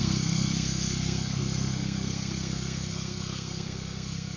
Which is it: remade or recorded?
remade